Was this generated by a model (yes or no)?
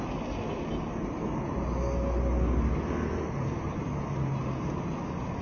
no